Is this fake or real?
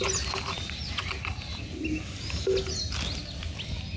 real